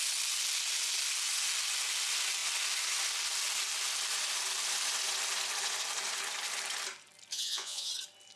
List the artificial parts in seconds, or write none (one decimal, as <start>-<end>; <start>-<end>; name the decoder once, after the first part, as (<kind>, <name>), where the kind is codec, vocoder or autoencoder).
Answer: 7.3-7.9 (vocoder, Vocos)